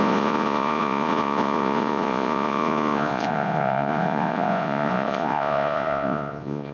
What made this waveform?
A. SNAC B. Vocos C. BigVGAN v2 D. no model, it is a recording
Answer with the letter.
B